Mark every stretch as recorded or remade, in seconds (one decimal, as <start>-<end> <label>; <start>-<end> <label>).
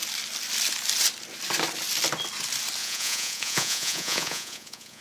0.0-2.8 recorded; 2.8-5.0 remade